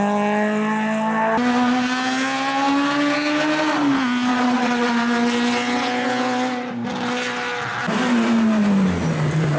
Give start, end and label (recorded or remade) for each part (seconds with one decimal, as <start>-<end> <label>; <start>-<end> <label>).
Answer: 0.0-4.3 recorded; 4.3-4.9 remade; 4.9-9.6 recorded